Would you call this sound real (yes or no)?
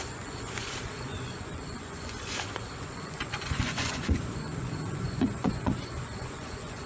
no